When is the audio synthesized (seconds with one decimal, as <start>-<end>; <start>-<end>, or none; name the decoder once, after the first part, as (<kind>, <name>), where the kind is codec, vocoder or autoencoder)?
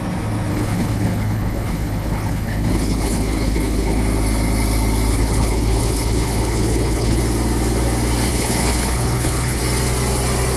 0.5-4.0 (codec, HILCodec); 5.1-7.2; 8.3-9.6